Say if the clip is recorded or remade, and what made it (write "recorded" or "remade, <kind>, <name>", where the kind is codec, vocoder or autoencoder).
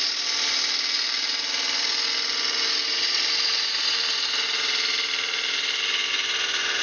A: recorded